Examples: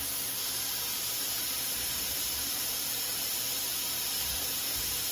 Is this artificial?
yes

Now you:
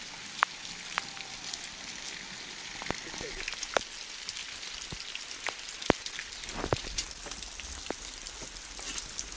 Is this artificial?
no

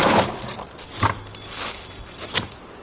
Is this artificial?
no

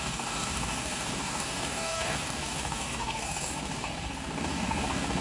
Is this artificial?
yes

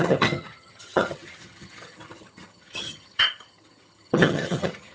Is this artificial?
yes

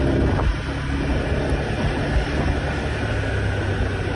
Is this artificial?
no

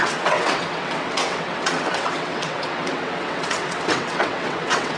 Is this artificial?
yes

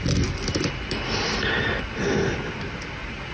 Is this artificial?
no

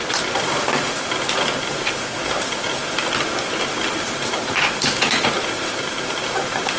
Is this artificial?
yes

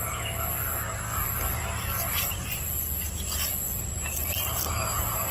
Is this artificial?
no